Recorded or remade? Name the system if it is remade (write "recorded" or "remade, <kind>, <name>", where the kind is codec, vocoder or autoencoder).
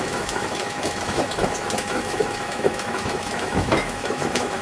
remade, autoencoder, DAC-VAE